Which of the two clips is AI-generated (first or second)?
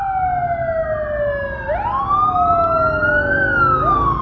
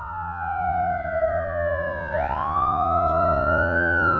second